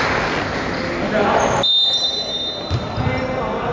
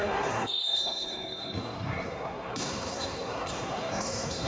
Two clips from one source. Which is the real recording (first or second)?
first